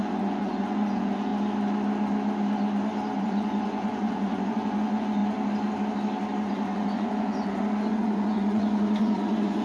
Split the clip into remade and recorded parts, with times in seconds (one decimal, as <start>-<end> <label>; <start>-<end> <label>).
0.0-1.3 remade; 1.3-3.2 recorded; 3.2-5.2 remade; 5.2-6.5 recorded; 6.5-9.6 remade